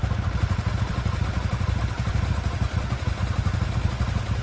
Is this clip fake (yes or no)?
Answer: no